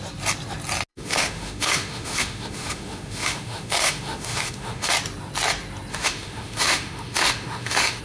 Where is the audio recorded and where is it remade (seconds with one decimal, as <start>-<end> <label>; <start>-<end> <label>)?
0.0-0.9 recorded; 0.9-4.9 remade; 4.9-5.9 recorded; 5.9-8.0 remade